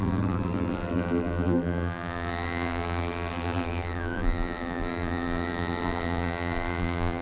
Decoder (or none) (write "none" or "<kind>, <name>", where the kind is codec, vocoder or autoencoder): vocoder, BigVGAN v2